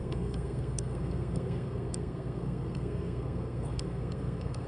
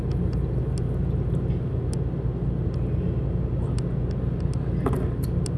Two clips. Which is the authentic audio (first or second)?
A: second